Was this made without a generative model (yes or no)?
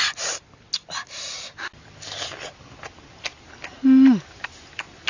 yes